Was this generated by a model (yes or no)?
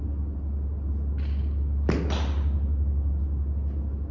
no